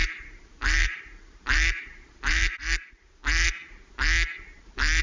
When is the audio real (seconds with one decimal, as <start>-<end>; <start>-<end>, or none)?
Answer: 3.2-5.0